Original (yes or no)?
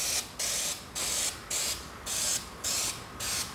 yes